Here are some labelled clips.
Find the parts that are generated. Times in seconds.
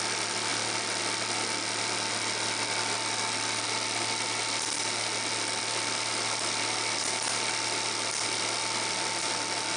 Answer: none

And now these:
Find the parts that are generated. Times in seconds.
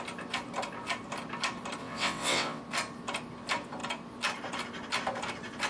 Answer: 1.8-2.6 (vocoder, WaveNeXt)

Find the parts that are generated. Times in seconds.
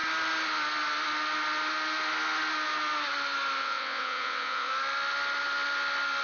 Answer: 3.6-4.7 (vocoder, WaveNeXt)